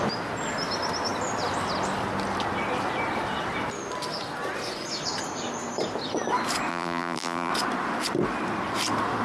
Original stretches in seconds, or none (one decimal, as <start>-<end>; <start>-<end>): 0.0-6.7; 7.5-9.2